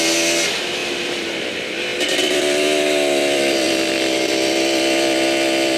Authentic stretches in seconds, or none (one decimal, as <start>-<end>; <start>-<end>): 0.0-0.8; 1.5-1.9